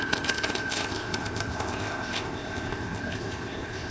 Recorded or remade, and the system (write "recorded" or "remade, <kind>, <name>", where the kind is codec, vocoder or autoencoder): remade, codec, ZipCodec